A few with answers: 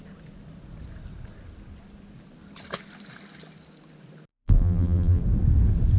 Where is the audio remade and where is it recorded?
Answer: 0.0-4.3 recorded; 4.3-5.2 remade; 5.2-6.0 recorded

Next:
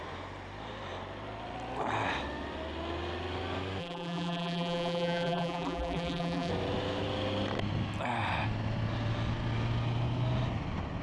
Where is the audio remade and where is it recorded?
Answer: 0.0-3.8 recorded; 3.8-6.5 remade; 6.5-11.0 recorded

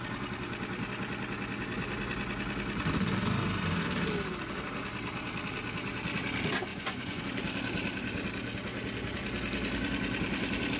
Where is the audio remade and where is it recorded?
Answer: 0.0-6.7 recorded; 6.7-7.2 remade; 7.2-10.8 recorded